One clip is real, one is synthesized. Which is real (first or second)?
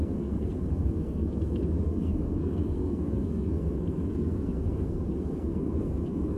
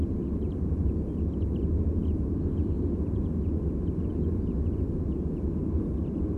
second